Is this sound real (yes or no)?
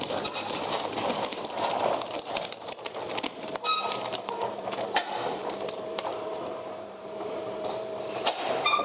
no